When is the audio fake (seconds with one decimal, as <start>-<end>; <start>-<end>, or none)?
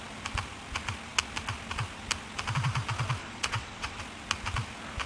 3.2-4.0